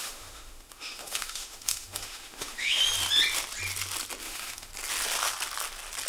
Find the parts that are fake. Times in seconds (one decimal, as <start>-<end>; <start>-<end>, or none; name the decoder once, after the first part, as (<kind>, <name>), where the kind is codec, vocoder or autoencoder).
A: 0.0-2.8 (autoencoder, DAC-VAE); 4.2-4.7